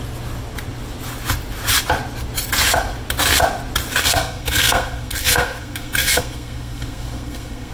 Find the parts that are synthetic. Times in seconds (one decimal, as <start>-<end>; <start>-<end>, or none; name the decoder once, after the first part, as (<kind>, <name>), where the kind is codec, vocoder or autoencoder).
4.0-7.7 (codec, SNAC)